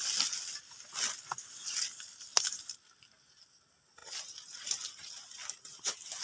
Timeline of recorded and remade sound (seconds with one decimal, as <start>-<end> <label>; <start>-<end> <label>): 0.0-6.2 recorded